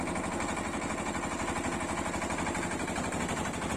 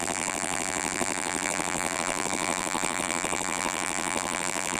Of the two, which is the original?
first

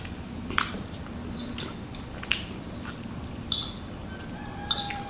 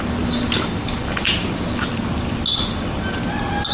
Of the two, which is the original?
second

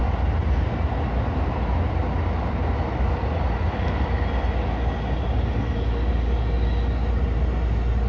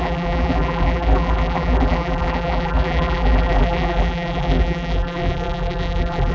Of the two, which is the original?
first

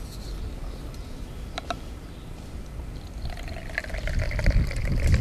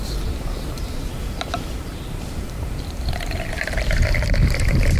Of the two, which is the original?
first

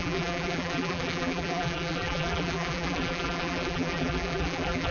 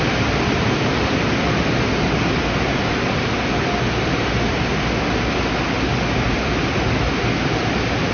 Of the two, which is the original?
second